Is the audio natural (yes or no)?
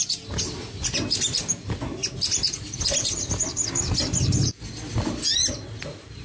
yes